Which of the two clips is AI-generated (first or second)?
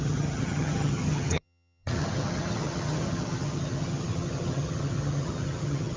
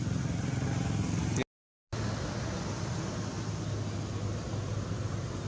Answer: first